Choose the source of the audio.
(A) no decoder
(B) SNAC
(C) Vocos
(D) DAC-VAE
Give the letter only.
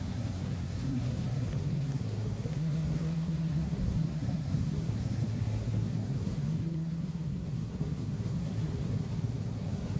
B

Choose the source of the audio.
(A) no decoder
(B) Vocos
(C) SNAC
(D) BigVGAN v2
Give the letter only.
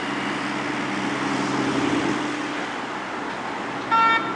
A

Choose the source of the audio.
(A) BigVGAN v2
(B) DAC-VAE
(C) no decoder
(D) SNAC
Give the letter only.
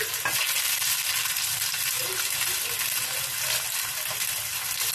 C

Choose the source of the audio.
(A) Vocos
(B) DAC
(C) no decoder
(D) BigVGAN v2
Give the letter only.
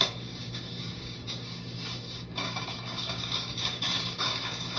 B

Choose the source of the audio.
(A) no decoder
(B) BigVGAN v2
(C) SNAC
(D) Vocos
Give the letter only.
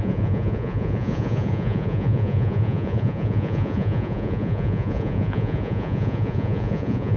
D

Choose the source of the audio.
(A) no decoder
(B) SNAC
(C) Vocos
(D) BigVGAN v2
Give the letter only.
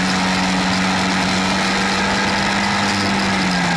A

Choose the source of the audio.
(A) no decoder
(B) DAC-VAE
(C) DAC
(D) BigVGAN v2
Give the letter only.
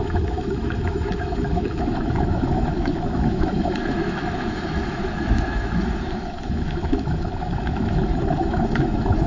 B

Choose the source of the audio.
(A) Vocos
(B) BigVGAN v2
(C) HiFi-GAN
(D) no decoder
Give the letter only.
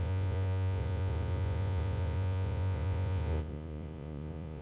A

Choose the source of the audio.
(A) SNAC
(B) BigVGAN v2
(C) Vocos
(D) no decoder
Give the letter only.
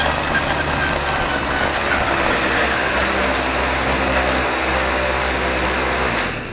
D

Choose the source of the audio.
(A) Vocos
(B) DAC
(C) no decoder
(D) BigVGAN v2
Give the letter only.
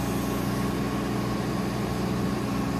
C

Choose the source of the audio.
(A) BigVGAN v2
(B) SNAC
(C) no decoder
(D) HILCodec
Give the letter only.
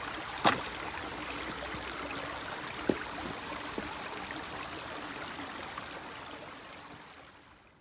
C